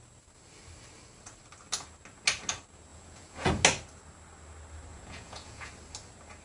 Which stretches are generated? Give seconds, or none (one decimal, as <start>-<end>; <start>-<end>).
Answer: 2.9-3.5; 4.9-5.7